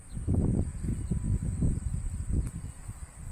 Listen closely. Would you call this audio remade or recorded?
recorded